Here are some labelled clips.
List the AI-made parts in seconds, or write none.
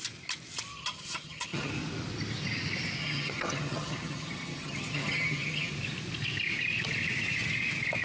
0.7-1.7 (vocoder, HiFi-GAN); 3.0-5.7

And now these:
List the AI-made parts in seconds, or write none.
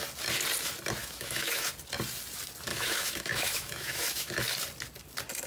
1.0-1.7 (autoencoder, DAC-VAE); 2.7-4.3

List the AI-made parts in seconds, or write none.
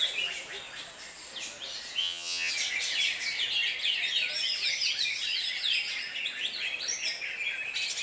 2.0-2.5 (vocoder, HiFi-GAN)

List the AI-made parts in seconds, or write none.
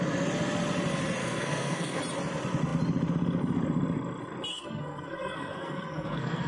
1.2-2.0 (codec, SNAC); 4.5-6.5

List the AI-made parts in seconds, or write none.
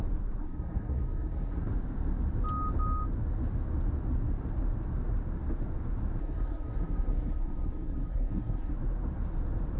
0.4-1.6 (codec, SNAC); 6.2-8.7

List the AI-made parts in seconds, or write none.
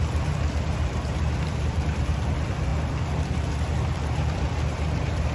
0.0-5.3 (vocoder, BigVGAN v2)